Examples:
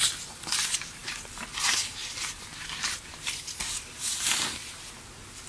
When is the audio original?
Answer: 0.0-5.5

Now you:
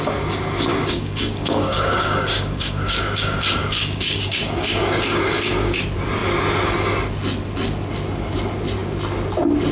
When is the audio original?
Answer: 0.0-0.7; 5.8-9.7